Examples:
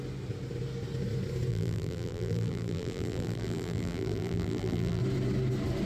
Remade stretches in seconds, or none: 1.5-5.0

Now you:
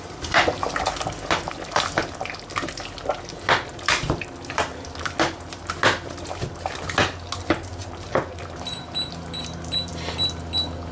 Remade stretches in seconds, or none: 3.7-4.3; 7.8-9.9

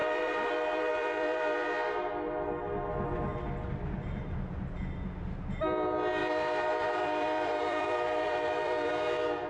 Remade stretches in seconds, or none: 0.0-1.6; 6.2-8.9

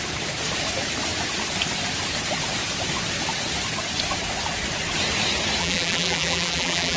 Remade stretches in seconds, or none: 5.6-7.0

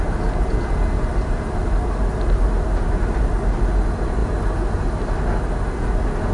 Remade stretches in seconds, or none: 1.1-3.3

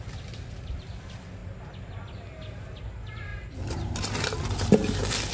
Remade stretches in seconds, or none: 0.0-1.4; 2.8-5.3